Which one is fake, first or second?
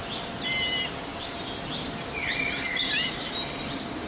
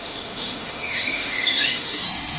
second